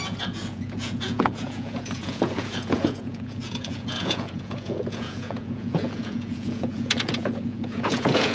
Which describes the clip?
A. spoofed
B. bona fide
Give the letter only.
A